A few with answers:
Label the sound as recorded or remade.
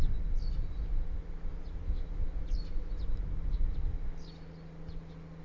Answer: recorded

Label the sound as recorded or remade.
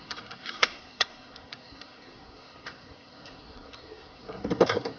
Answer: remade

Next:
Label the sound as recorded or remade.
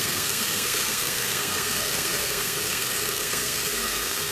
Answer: remade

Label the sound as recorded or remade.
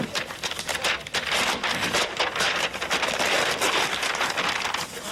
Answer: recorded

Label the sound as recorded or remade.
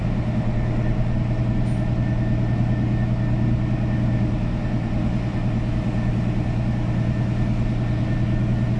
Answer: recorded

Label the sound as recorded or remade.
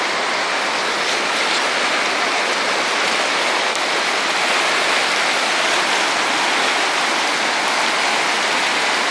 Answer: recorded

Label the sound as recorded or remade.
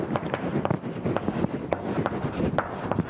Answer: recorded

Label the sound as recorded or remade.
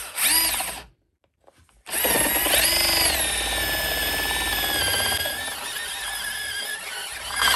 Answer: recorded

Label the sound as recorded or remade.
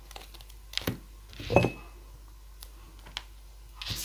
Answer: recorded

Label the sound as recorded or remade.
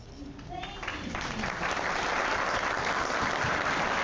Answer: recorded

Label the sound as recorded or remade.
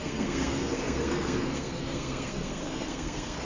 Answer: remade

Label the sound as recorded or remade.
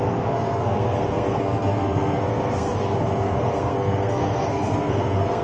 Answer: remade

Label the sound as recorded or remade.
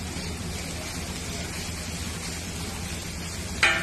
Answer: recorded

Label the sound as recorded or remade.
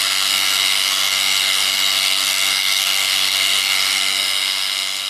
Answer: remade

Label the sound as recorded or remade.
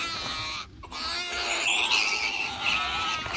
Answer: recorded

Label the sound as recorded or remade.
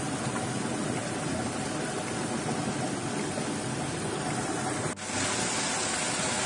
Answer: recorded